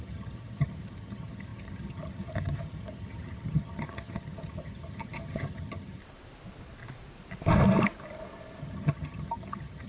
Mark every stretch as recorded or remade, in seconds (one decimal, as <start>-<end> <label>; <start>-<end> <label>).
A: 0.0-6.0 remade; 6.0-8.6 recorded; 8.6-9.9 remade